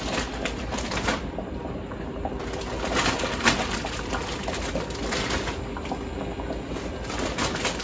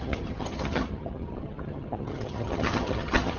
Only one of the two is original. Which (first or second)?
first